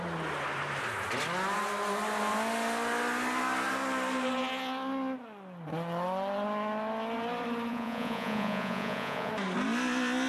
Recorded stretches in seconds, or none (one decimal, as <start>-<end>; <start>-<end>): 0.0-7.7; 9.3-10.3